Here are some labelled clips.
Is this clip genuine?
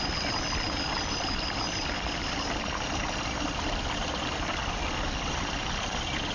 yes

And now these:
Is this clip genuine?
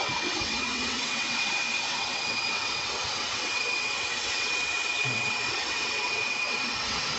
no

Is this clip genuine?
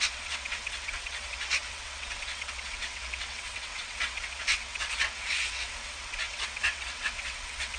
no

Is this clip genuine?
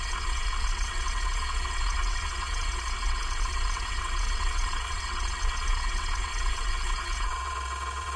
no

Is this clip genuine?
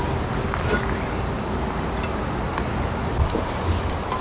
yes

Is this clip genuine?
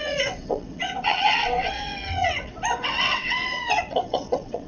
no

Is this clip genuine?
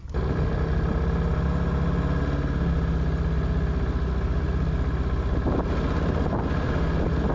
yes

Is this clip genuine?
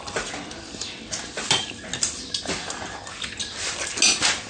yes